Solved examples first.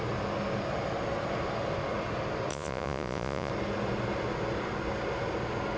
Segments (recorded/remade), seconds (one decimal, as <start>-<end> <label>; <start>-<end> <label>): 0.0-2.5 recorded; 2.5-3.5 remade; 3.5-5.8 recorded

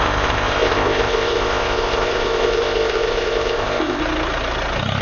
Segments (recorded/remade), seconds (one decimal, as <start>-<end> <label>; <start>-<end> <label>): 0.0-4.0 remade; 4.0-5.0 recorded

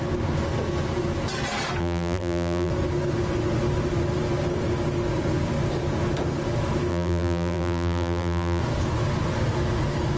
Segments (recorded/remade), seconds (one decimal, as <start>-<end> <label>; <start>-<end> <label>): 0.0-1.8 recorded; 1.8-2.7 remade; 2.7-6.9 recorded; 6.9-8.6 remade; 8.6-10.2 recorded

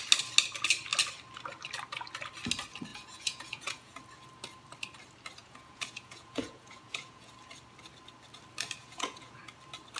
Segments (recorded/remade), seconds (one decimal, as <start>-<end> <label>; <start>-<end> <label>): 0.0-2.9 recorded; 2.9-4.0 remade; 4.0-5.4 recorded; 5.4-7.3 remade; 7.3-8.8 recorded; 8.8-9.4 remade; 9.4-10.0 recorded